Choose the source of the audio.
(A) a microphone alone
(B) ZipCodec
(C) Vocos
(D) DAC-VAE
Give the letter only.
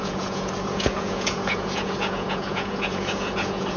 C